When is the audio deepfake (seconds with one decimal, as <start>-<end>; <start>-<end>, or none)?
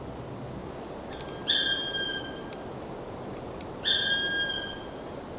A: none